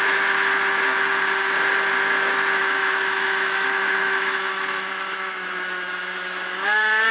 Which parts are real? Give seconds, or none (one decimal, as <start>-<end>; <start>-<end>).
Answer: 0.0-2.6